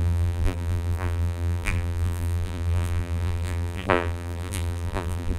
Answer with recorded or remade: remade